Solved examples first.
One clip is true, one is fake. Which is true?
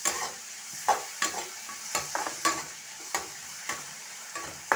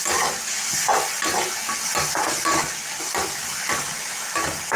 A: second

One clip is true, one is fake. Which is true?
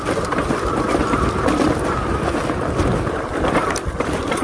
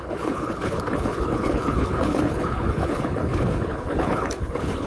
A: first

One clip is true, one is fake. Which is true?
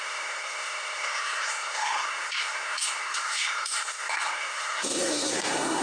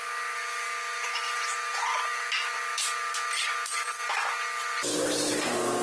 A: second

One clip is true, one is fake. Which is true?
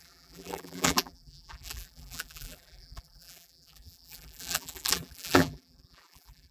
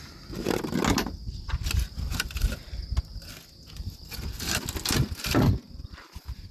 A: second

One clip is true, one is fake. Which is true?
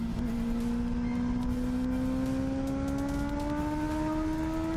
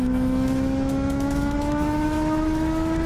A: first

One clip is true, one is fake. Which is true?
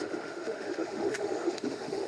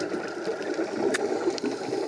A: second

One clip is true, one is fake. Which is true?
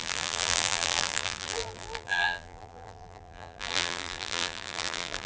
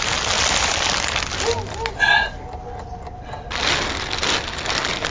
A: second